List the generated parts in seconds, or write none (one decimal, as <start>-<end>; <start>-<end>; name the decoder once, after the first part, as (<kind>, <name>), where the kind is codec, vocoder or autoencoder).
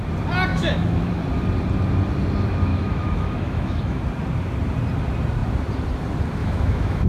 0.5-1.2 (autoencoder, DAC-VAE); 2.7-4.0; 6.4-7.1